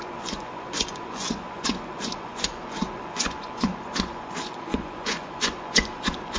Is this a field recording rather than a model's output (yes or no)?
no